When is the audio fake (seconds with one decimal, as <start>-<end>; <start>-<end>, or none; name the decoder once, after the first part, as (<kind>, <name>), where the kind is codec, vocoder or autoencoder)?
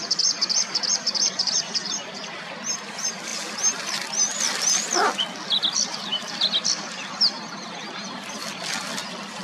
0.0-3.3 (vocoder, BigVGAN v2); 4.6-9.4